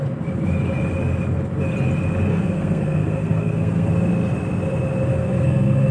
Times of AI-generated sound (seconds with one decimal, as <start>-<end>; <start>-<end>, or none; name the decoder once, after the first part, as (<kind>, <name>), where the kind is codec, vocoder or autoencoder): 2.3-3.9 (codec, SNAC); 5.1-5.9